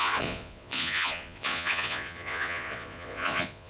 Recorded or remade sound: remade